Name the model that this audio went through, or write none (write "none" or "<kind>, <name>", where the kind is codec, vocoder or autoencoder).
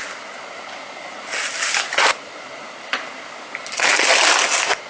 none